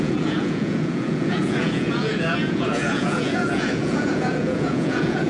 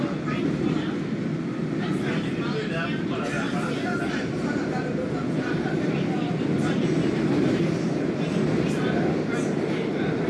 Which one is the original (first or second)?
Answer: second